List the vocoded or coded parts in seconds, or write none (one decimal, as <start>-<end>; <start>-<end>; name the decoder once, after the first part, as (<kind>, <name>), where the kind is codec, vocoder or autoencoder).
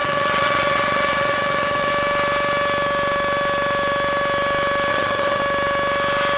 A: 0.0-1.9 (vocoder, HiFi-GAN); 4.9-5.4